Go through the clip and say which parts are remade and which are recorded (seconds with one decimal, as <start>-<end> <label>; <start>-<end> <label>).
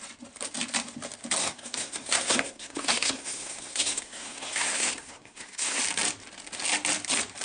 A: 0.0-1.4 recorded; 1.4-5.8 remade; 5.8-7.4 recorded